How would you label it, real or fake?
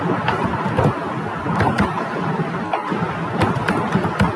real